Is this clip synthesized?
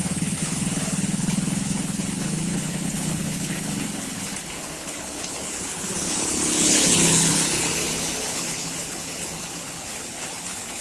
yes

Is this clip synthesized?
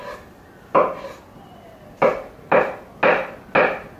no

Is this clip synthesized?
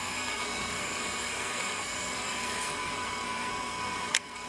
yes